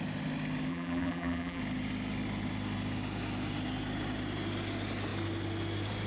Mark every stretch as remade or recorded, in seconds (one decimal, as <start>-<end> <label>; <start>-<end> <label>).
0.0-0.7 recorded; 0.7-1.6 remade; 1.6-6.1 recorded